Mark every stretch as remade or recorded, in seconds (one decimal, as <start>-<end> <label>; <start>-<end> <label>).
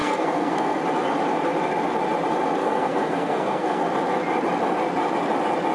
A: 0.0-0.8 remade; 0.8-2.6 recorded; 2.6-3.8 remade; 3.8-5.7 recorded